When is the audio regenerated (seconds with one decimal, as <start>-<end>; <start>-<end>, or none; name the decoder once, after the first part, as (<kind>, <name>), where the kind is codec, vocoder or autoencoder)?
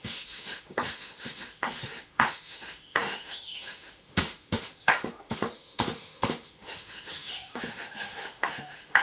0.0-9.0 (autoencoder, DAC-VAE)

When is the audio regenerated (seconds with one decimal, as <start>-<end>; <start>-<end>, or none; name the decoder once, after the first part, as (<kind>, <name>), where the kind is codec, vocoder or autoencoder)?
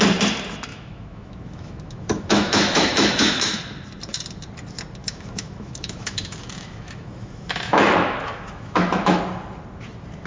0.7-3.6 (autoencoder, DAC-VAE); 5.0-9.2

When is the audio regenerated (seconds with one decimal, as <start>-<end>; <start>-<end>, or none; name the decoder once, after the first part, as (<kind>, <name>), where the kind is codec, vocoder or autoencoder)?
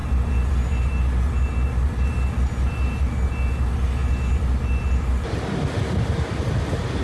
none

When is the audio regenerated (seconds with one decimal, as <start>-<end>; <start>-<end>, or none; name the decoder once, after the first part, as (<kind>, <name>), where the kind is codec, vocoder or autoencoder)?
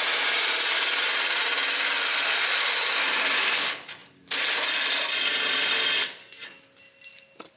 none